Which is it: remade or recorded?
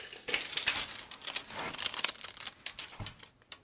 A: recorded